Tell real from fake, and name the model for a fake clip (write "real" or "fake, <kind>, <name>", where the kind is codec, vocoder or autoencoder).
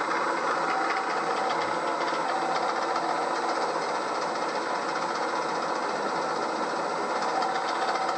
real